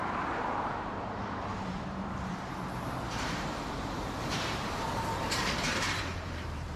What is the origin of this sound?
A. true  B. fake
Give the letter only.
B